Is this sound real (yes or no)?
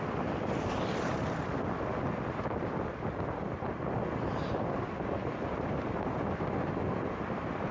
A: yes